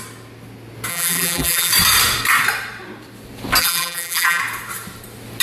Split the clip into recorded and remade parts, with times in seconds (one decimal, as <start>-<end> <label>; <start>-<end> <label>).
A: 0.0-0.9 recorded; 0.9-1.7 remade; 1.7-3.6 recorded; 3.6-4.4 remade; 4.4-5.4 recorded